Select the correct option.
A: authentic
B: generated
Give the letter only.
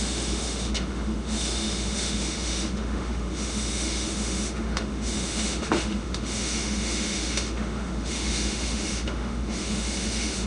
B